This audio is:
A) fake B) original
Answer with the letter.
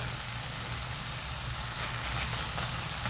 B